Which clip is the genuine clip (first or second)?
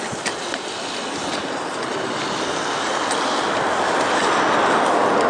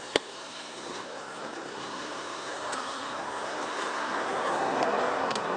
first